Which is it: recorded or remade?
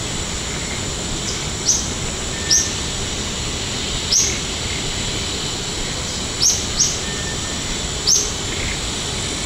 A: recorded